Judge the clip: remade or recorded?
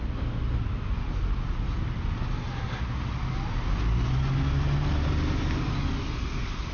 recorded